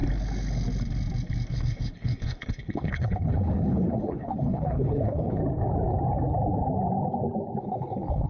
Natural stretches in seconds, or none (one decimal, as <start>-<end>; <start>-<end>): 0.0-1.5; 5.4-7.6